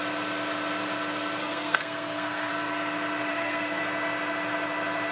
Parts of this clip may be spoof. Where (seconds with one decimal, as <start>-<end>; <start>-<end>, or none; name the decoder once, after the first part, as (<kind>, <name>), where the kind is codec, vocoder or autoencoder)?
1.4-2.5 (codec, SNAC); 3.3-3.8